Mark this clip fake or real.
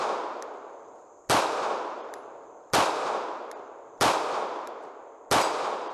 real